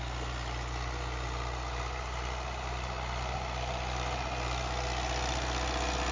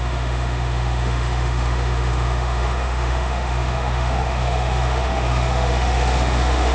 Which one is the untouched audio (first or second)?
first